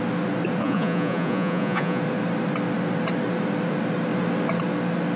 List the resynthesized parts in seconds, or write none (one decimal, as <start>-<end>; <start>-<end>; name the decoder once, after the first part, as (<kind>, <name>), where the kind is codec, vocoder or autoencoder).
0.6-2.0 (vocoder, Vocos)